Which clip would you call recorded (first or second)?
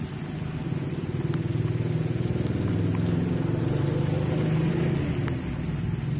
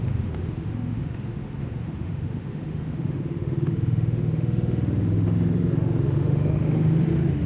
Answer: first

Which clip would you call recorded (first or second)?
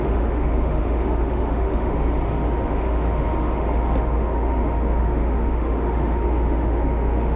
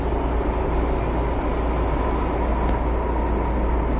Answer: second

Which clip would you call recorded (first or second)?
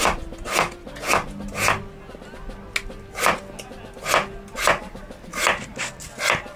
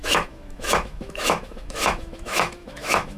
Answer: first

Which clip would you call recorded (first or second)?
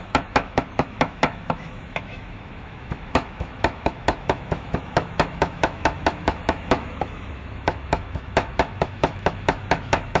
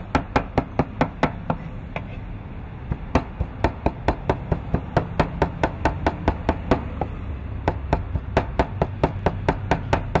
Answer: second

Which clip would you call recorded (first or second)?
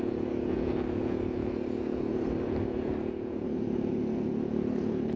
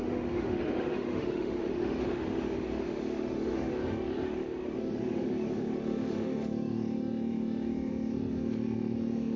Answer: first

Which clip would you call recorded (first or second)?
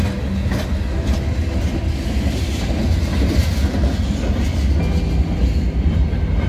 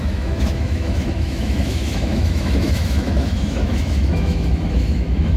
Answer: first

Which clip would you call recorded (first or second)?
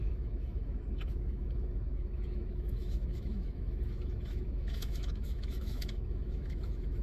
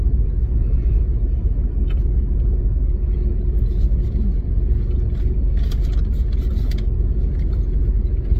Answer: second